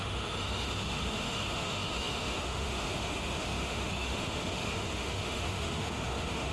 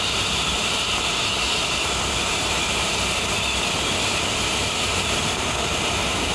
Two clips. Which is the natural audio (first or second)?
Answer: second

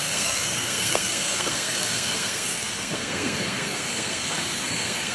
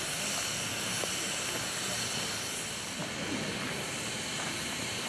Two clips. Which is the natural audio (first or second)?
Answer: second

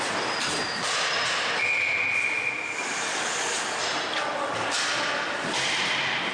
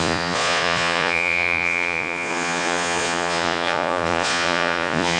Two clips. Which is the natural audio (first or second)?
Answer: first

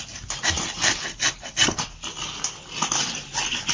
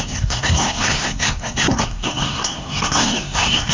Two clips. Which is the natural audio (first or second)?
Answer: first